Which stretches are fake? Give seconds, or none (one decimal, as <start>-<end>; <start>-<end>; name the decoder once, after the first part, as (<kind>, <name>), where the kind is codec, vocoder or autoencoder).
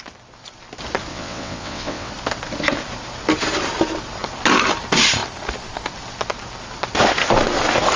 1.1-2.1 (vocoder, WaveNeXt)